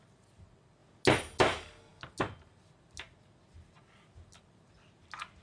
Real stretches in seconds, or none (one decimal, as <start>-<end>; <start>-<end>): 0.0-5.4